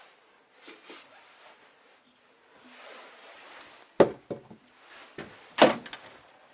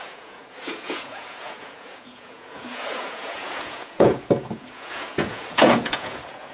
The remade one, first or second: second